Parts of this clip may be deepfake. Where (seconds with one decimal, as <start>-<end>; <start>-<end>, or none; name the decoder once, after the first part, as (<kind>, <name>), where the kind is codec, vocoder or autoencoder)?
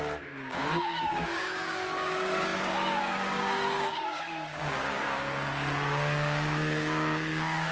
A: 0.0-7.7 (codec, DAC)